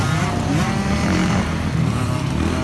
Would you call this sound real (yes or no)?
yes